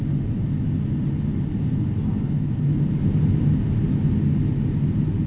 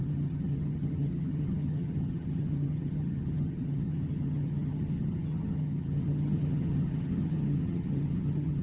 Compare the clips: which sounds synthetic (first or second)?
second